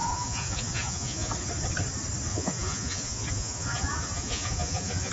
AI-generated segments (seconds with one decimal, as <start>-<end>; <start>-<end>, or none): 0.0-1.3; 2.3-5.1